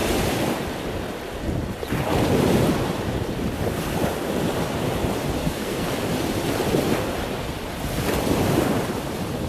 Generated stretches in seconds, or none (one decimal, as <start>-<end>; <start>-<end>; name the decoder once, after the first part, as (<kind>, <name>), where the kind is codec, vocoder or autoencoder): 5.4-5.9 (codec, SNAC)